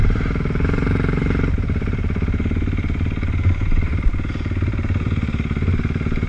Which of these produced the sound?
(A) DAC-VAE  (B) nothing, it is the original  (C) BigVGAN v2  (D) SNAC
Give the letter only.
C